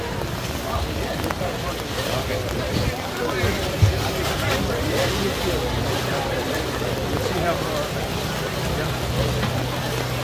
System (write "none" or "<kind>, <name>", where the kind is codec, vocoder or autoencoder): none